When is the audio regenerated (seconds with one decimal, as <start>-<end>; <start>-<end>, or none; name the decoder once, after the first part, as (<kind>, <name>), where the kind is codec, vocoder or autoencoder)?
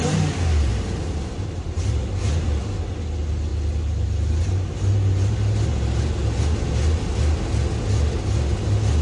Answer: 0.7-1.6 (vocoder, BigVGAN v2)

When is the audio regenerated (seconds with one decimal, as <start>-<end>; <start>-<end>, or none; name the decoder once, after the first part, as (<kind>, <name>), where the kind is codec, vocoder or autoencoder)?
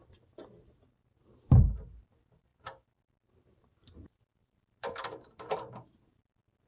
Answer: 0.0-6.7 (vocoder, BigVGAN v2)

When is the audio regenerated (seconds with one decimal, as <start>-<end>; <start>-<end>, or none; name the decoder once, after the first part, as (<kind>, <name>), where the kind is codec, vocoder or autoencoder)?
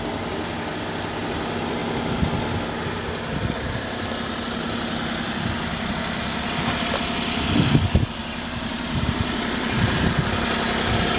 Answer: 8.2-10.2 (vocoder, BigVGAN v2)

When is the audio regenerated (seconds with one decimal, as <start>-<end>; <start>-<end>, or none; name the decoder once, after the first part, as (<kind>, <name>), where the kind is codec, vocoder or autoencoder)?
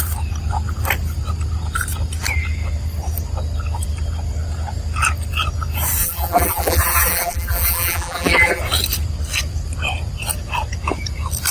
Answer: 6.0-8.6 (vocoder, BigVGAN v2)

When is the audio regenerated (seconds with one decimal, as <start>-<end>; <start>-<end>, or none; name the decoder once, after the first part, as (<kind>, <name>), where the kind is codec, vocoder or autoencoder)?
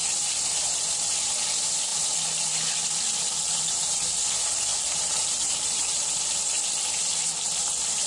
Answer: 4.7-6.1 (vocoder, BigVGAN v2)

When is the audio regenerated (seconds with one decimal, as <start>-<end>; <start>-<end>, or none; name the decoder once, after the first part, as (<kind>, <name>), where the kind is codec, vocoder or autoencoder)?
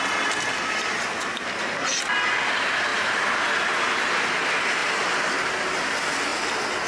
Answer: 2.9-3.4 (vocoder, BigVGAN v2)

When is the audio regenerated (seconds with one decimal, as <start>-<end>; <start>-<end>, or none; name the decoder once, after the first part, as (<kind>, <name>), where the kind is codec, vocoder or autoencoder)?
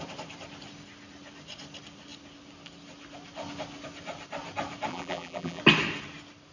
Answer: 4.9-5.6 (vocoder, BigVGAN v2)